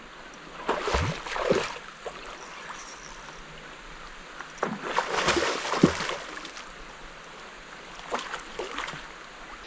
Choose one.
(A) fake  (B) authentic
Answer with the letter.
B